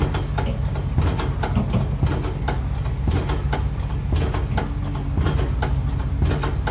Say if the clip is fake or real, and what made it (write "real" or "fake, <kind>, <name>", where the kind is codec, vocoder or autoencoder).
real